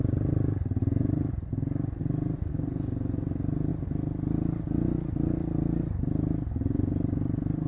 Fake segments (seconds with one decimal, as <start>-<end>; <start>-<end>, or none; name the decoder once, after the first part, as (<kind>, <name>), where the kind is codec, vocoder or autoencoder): none